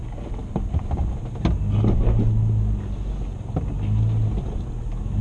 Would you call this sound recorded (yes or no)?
yes